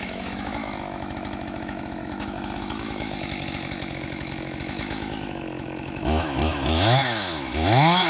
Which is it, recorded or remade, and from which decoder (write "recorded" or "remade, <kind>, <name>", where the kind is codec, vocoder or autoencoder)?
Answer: remade, autoencoder, DAC-VAE